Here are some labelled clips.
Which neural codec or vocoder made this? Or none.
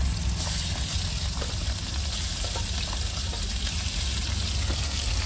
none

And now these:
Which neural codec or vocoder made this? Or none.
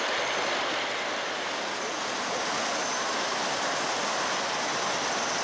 none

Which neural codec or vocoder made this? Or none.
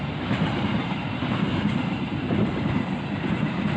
none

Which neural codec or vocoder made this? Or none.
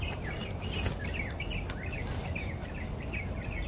none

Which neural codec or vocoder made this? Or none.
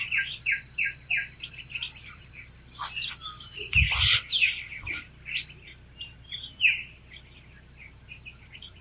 vocoder, BigVGAN v2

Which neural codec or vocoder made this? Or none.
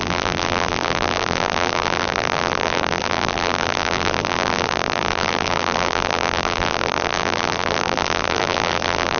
vocoder, BigVGAN v2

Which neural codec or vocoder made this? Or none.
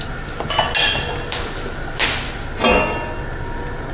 none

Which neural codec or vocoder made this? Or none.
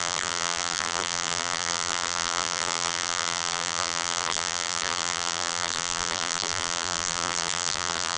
vocoder, BigVGAN v2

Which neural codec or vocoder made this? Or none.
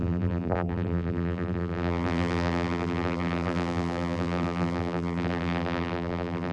vocoder, BigVGAN v2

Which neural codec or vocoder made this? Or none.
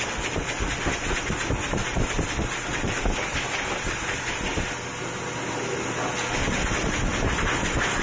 none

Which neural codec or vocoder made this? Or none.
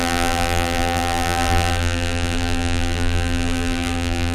vocoder, BigVGAN v2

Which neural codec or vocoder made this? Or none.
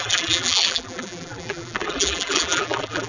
vocoder, BigVGAN v2